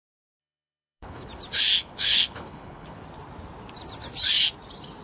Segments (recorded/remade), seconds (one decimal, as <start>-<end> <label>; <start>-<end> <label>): 0.0-0.4 recorded; 0.4-1.3 remade; 1.3-1.8 recorded; 1.8-3.0 remade; 3.0-5.0 recorded